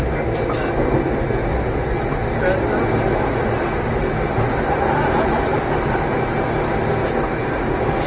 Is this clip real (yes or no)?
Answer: yes